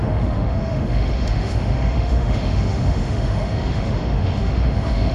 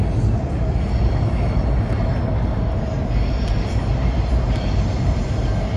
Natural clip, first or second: second